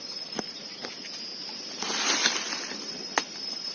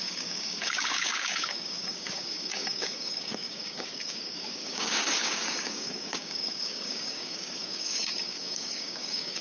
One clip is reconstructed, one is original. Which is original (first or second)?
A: first